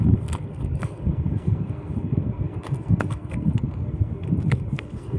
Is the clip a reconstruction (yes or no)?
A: yes